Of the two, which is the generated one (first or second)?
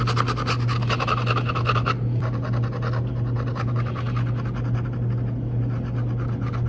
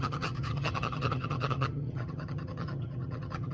second